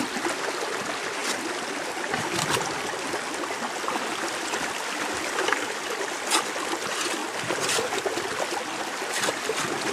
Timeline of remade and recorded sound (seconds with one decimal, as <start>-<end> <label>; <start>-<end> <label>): 0.0-1.2 recorded; 1.2-2.1 remade; 2.1-4.1 recorded; 4.1-5.1 remade; 5.1-9.9 recorded